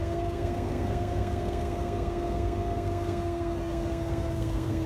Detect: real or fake fake